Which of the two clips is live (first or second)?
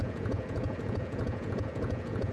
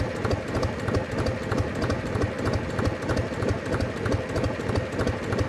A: second